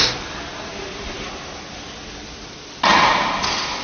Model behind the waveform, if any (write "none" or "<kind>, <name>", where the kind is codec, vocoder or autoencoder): none